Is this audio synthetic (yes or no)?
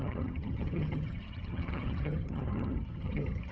yes